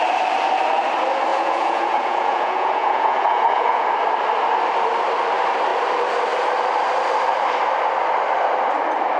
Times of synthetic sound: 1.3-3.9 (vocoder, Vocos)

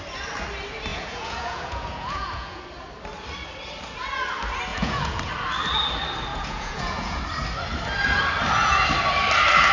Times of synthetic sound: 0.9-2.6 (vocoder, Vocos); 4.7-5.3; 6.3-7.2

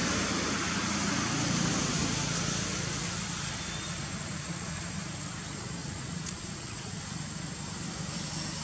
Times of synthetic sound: 4.3-4.8 (vocoder, Vocos); 5.8-7.0

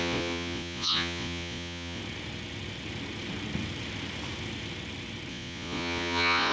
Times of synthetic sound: 0.0-2.0 (vocoder, Vocos); 5.3-6.5

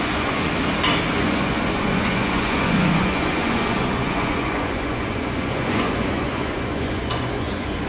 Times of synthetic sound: 0.0-0.5 (vocoder, Vocos); 1.1-7.9

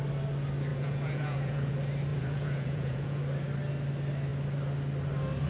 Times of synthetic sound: 0.7-1.7 (vocoder, Vocos); 2.1-3.2

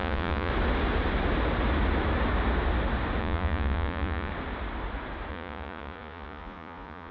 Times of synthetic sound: 0.0-0.5 (vocoder, Vocos); 3.2-4.3; 5.3-7.1